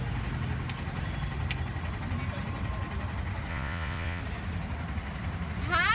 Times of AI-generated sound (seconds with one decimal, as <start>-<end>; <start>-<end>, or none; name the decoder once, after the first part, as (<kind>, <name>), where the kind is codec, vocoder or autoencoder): 3.5-4.2 (vocoder, Vocos)